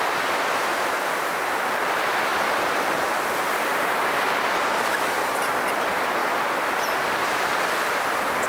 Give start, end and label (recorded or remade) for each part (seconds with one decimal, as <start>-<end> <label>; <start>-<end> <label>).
0.0-3.7 recorded; 3.7-5.7 remade; 5.7-6.2 recorded; 6.2-8.5 remade